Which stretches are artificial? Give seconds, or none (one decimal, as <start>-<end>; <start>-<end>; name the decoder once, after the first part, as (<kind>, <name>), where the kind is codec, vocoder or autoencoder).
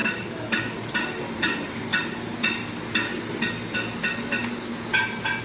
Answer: 0.0-0.6 (autoencoder, DAC-VAE)